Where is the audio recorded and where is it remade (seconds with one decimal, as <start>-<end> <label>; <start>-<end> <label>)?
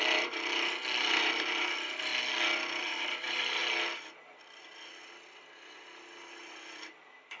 0.0-2.1 remade; 2.1-2.8 recorded; 2.8-3.6 remade; 3.6-7.0 recorded; 7.0-7.4 remade